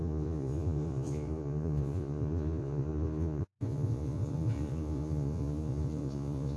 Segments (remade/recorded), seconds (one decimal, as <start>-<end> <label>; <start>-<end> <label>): 0.0-6.6 remade